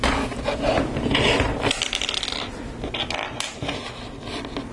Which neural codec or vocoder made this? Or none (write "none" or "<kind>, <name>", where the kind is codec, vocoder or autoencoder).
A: none